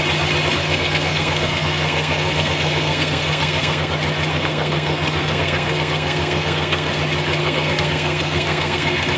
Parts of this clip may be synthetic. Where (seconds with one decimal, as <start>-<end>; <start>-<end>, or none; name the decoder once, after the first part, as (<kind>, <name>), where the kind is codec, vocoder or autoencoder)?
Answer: 0.6-3.9 (codec, SNAC); 4.3-7.0; 7.4-9.2